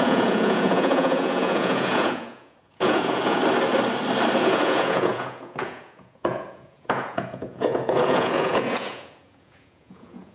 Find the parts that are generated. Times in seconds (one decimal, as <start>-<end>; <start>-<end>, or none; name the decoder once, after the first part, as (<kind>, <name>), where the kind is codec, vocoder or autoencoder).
0.0-3.4 (vocoder, Vocos); 4.4-10.3